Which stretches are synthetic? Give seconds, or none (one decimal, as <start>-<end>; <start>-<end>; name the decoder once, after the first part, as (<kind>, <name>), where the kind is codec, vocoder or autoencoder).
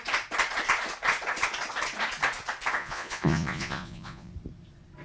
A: 2.8-4.3 (vocoder, Vocos)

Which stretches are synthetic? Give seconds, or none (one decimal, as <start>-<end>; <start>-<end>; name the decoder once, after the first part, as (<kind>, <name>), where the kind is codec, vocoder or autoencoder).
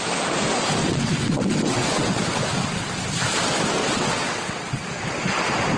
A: 0.8-2.2 (vocoder, WaveNeXt); 3.8-4.8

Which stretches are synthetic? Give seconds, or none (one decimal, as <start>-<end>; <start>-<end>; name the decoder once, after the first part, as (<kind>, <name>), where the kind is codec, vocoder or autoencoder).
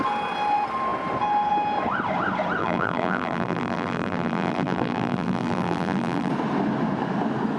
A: 2.6-6.3 (vocoder, BigVGAN v2)